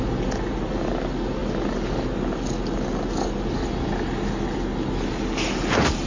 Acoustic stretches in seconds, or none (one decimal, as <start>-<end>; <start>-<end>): 0.0-6.1